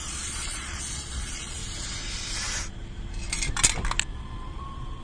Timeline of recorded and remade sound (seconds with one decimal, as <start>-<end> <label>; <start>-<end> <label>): 0.0-1.6 remade; 1.6-4.1 recorded; 4.1-5.0 remade